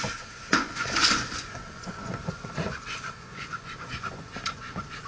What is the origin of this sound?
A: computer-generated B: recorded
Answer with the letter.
A